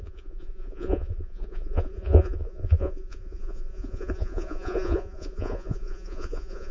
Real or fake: fake